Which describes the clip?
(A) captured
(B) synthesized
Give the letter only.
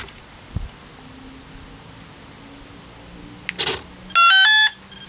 A